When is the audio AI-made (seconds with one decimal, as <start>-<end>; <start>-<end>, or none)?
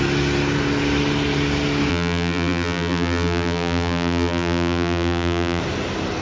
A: 1.9-5.6